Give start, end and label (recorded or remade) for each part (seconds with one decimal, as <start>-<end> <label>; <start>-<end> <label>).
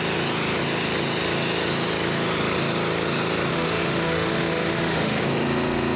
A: 0.0-3.5 recorded; 3.5-5.2 remade; 5.2-6.0 recorded